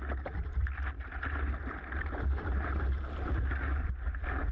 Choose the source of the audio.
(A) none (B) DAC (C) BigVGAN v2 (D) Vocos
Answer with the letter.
A